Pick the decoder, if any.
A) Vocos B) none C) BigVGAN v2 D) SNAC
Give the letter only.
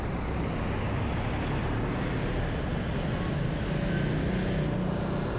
B